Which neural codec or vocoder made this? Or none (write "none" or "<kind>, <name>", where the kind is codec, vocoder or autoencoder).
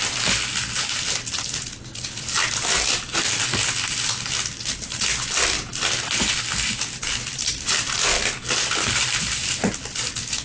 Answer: none